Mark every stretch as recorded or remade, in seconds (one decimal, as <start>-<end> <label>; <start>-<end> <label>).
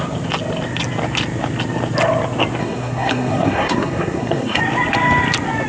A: 0.0-2.6 recorded; 2.6-4.6 remade; 4.6-5.7 recorded